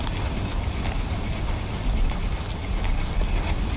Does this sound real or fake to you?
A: real